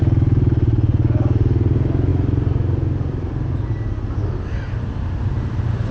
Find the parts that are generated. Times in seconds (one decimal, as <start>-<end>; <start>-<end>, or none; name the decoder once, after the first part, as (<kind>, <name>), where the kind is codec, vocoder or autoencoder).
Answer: none